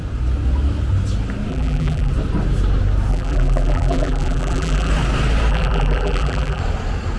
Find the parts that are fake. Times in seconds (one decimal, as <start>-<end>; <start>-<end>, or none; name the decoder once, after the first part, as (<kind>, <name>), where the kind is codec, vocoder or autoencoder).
1.5-2.1 (vocoder, BigVGAN v2); 3.1-4.9; 5.5-6.6